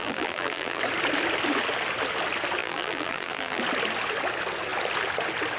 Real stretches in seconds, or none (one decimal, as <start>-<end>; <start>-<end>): 0.8-2.6; 3.6-5.6